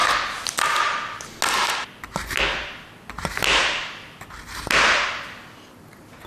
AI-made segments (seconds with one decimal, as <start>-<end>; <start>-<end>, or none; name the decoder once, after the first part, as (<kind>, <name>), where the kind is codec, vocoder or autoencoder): none